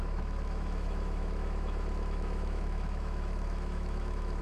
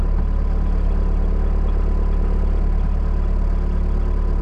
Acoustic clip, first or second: second